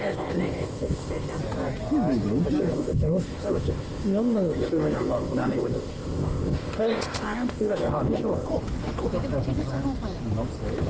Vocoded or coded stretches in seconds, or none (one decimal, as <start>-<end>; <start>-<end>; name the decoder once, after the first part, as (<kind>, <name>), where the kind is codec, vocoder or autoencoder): 0.0-1.4 (codec, ZipCodec); 2.6-8.5